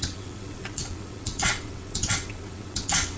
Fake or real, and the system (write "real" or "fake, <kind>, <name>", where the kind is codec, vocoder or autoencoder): fake, vocoder, WaveNeXt